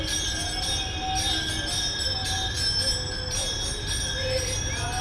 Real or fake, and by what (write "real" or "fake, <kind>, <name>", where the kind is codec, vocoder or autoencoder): real